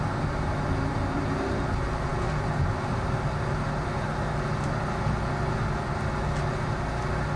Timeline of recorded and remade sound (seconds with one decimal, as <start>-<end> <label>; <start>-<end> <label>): 0.0-7.4 recorded